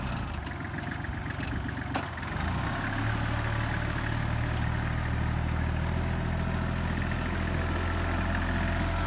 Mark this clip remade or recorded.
recorded